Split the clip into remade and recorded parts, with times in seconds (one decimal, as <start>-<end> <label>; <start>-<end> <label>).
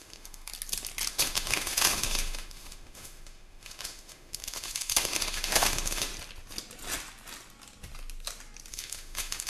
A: 0.0-0.5 remade; 0.5-1.1 recorded; 1.1-6.1 remade; 6.1-8.7 recorded; 8.7-9.5 remade